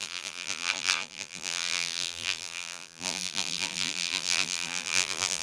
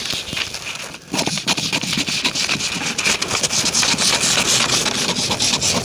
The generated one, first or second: first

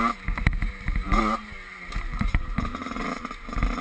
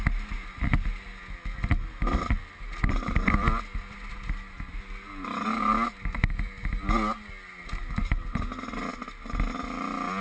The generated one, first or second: first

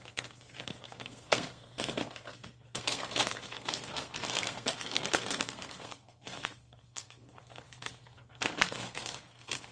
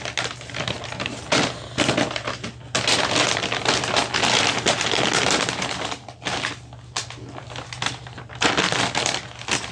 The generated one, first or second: first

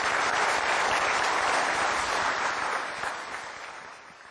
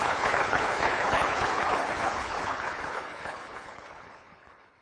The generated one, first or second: second